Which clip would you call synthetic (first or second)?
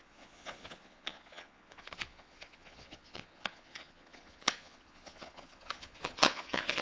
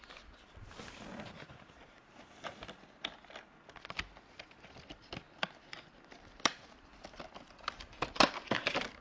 first